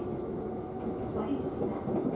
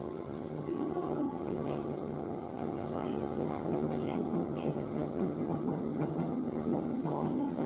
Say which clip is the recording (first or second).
first